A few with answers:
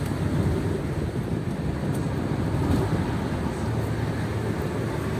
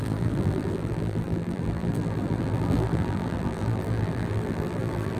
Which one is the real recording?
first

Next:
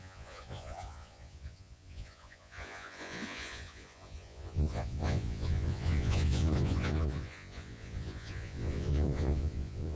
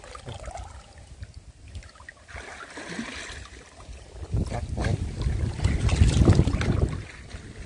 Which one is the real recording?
second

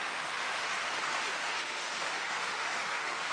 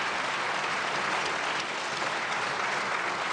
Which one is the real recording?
second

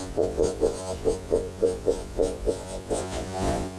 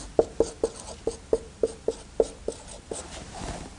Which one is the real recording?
second